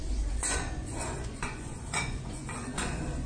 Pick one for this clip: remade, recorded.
remade